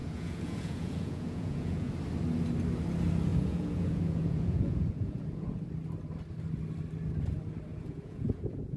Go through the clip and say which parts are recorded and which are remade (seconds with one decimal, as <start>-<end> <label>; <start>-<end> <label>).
0.0-1.9 remade; 1.9-3.3 recorded; 3.3-5.6 remade; 5.6-7.7 recorded; 7.7-8.8 remade